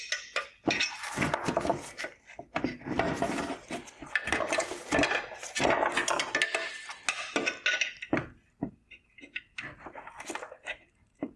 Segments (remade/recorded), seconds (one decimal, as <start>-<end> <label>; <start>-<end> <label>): 0.0-11.4 recorded